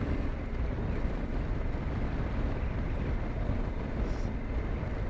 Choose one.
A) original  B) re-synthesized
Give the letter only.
A